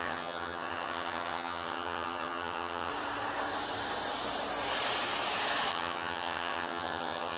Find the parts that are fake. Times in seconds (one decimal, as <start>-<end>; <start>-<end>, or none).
0.0-2.9; 5.7-7.4